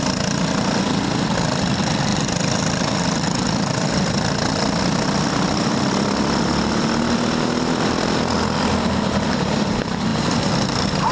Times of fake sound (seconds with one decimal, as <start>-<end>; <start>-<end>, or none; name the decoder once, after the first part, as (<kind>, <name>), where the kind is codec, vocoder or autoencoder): none